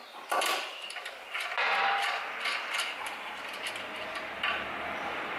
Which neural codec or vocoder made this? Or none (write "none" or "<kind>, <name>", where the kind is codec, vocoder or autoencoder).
vocoder, BigVGAN v2